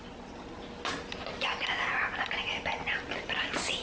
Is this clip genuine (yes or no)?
yes